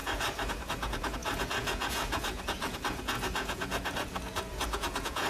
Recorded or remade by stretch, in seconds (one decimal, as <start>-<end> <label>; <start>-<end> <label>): 0.0-5.3 remade